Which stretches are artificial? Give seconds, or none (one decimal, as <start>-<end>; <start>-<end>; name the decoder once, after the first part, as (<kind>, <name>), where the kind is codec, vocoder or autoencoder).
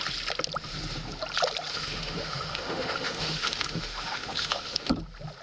1.7-4.9 (autoencoder, DAC-VAE)